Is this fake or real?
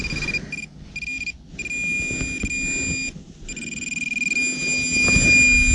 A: real